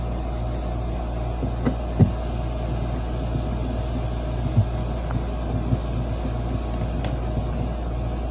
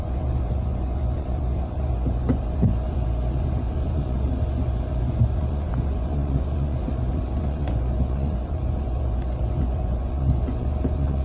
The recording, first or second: first